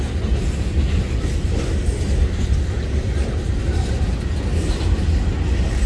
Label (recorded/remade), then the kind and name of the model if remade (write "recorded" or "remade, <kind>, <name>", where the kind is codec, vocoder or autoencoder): recorded